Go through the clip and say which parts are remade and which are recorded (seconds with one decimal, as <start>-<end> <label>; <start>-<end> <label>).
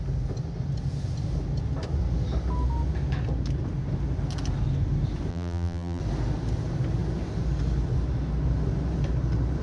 0.0-5.3 recorded; 5.3-6.0 remade; 6.0-9.6 recorded